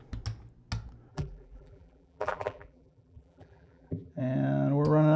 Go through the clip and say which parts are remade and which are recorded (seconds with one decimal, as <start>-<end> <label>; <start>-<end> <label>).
0.0-1.1 recorded; 1.1-4.2 remade; 4.2-5.2 recorded